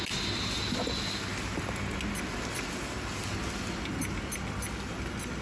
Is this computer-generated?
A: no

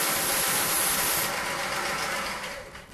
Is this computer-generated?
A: no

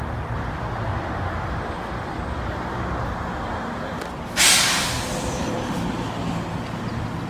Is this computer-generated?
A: no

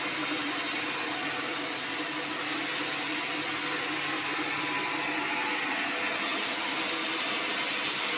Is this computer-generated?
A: no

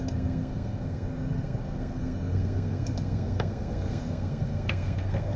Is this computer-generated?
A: yes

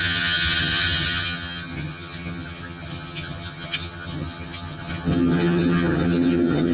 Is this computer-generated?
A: yes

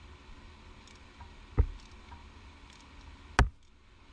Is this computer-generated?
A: no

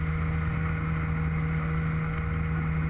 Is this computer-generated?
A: no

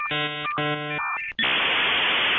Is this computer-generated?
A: no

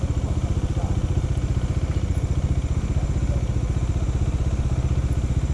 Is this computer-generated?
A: no